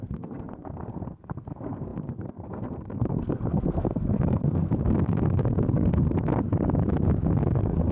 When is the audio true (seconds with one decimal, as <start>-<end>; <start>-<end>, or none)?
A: 6.3-7.4